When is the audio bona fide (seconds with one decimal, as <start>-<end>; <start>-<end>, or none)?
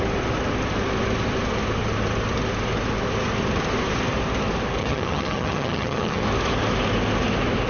0.0-4.8; 6.2-7.7